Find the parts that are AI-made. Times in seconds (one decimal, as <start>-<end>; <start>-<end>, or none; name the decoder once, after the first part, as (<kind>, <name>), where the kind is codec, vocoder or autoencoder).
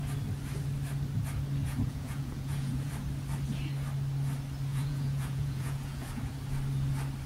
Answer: 1.6-2.9 (vocoder, Vocos); 4.7-6.3